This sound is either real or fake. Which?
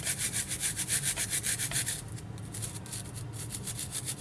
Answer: fake